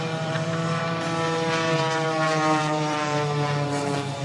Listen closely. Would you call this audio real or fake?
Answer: fake